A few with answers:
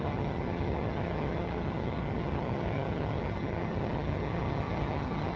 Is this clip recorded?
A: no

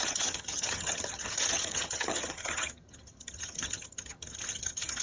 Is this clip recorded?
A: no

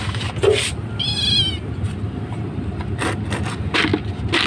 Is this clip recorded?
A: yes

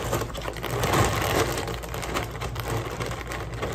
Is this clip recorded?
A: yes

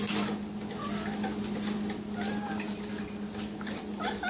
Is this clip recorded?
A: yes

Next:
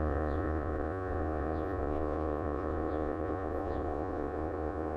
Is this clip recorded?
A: no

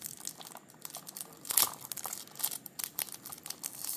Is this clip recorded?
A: yes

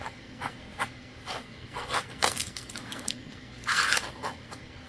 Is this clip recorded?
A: no